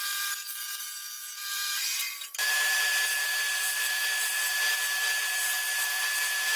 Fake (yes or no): yes